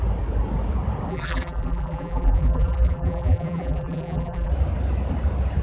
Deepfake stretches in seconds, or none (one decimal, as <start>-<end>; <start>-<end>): 1.1-4.5